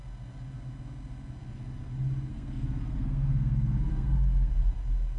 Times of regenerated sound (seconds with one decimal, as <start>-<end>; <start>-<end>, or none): 2.3-4.5